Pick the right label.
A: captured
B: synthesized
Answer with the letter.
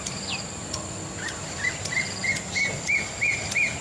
A